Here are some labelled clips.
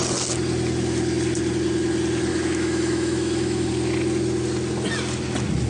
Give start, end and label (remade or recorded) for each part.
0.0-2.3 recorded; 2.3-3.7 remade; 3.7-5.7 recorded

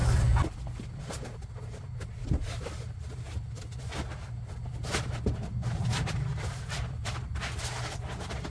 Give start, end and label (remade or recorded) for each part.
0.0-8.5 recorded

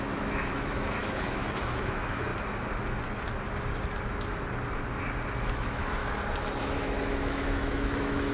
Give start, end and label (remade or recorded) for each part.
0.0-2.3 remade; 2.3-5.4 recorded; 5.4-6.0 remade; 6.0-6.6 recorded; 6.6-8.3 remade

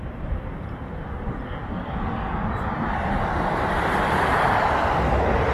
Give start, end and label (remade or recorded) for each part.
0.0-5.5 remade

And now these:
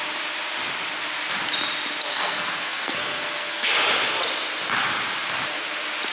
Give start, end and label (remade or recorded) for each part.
0.0-2.1 recorded; 2.1-3.7 remade; 3.7-6.1 recorded